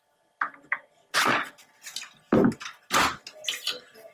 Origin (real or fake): real